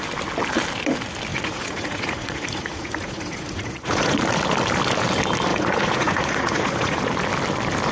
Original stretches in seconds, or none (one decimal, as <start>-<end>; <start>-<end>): 0.0-1.3; 4.2-5.5; 7.0-7.9